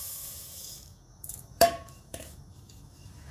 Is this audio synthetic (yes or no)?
yes